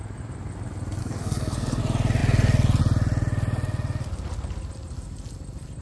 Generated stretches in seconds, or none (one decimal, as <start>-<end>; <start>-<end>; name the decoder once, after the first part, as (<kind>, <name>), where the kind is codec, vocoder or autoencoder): 1.0-1.8 (codec, SNAC)